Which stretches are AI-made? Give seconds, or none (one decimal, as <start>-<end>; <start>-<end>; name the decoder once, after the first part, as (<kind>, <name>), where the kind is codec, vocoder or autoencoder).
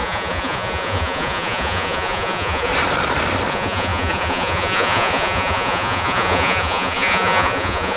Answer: 0.0-2.7 (vocoder, Vocos); 3.5-8.0